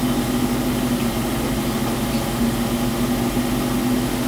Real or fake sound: real